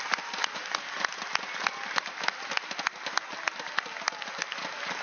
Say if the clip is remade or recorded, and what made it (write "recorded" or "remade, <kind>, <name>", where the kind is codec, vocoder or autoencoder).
recorded